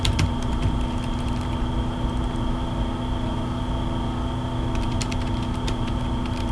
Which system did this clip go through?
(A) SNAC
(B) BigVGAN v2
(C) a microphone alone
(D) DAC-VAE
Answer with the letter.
C